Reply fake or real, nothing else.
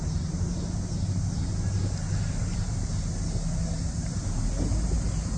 real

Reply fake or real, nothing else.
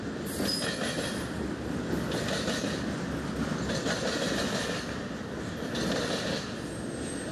real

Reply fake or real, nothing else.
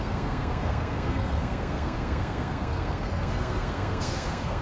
fake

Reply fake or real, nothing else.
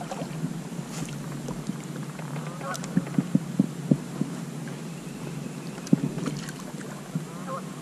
real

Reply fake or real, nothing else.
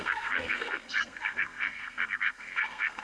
fake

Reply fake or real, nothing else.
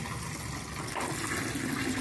real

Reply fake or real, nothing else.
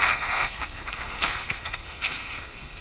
fake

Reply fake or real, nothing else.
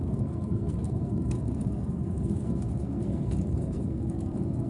fake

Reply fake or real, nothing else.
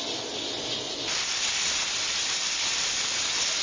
real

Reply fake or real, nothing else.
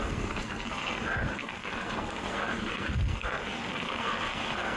fake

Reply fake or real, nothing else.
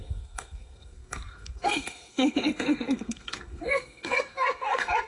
fake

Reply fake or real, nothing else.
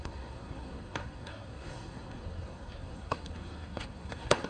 fake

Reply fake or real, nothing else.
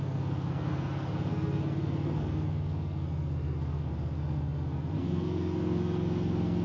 fake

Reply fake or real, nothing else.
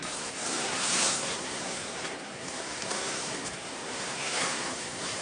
fake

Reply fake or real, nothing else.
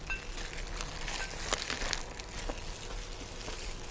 real